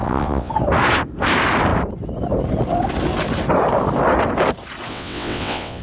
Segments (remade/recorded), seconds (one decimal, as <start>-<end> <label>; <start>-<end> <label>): 0.0-0.5 remade; 0.5-4.9 recorded; 4.9-5.8 remade